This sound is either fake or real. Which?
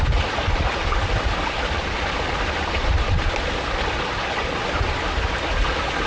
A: real